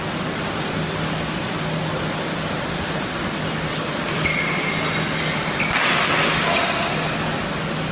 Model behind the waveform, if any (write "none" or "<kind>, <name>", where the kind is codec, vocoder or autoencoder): none